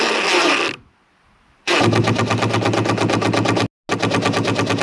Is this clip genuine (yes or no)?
yes